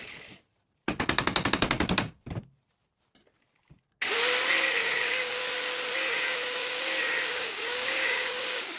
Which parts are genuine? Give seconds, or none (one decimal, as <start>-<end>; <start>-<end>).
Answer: 0.0-4.8; 5.4-6.6